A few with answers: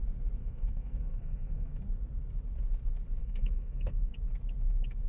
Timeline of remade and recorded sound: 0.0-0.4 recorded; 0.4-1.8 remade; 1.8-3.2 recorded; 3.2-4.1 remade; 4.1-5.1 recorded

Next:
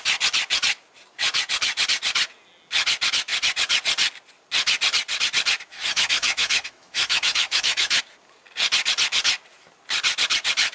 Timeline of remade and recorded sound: 0.0-5.7 recorded; 5.7-8.0 remade; 8.0-10.7 recorded

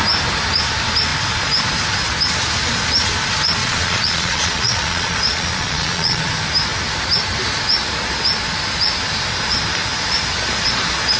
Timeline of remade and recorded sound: 0.0-3.6 recorded; 3.6-6.3 remade; 6.3-11.2 recorded

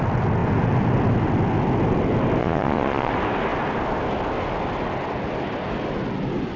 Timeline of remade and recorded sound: 0.0-2.4 recorded; 2.4-3.1 remade; 3.1-6.6 recorded

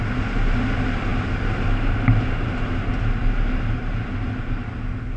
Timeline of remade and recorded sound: 0.0-5.2 recorded

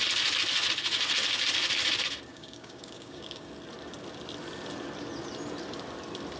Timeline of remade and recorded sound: 0.0-2.3 recorded; 2.3-3.5 remade; 3.5-6.4 recorded